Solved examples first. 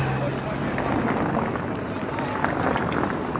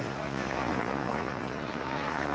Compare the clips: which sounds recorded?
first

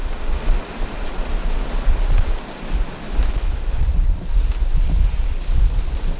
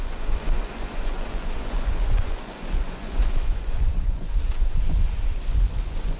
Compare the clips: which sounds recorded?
first